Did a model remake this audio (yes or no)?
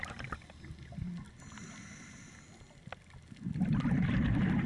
no